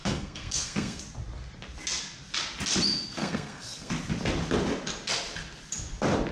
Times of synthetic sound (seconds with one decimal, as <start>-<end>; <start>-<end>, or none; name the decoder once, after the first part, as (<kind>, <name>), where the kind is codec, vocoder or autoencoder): 0.0-1.0 (codec, SNAC); 3.2-3.9